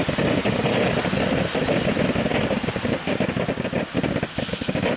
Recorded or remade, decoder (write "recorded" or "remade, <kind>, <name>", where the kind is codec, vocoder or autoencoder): recorded